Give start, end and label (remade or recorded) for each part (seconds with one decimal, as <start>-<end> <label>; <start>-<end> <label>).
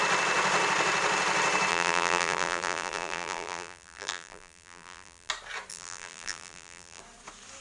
0.0-1.7 recorded; 1.7-5.3 remade; 5.3-5.7 recorded; 5.7-7.0 remade; 7.0-7.6 recorded